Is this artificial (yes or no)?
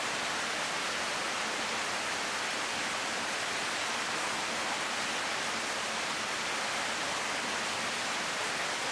no